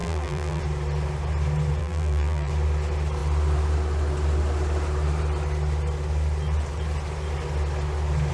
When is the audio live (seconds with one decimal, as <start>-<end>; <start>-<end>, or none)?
0.6-1.8; 2.5-8.3